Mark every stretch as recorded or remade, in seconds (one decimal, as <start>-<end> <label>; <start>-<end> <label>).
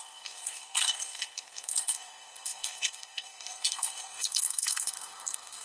0.0-5.6 remade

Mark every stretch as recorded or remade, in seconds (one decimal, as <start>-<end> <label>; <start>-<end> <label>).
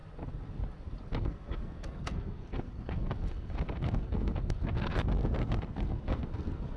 0.0-1.1 recorded; 1.1-6.8 remade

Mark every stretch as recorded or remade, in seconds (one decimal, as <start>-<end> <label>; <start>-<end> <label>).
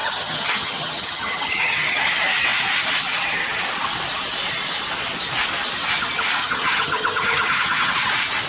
0.0-2.0 remade; 2.0-6.4 recorded; 6.4-7.9 remade; 7.9-8.5 recorded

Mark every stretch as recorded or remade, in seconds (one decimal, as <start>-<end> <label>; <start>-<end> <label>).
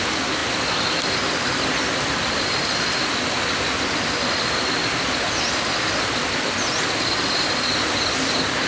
0.0-8.7 recorded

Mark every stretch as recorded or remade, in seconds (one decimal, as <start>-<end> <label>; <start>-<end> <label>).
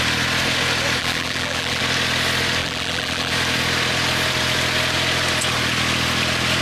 0.0-1.0 recorded; 1.0-1.8 remade; 1.8-2.6 recorded; 2.6-3.3 remade; 3.3-6.6 recorded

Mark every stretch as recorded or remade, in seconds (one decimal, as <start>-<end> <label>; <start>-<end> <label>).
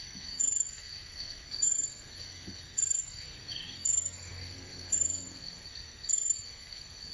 0.0-7.1 remade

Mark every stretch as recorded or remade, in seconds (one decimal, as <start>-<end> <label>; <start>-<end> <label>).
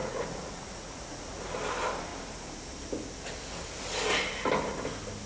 0.0-1.2 remade; 1.2-5.3 recorded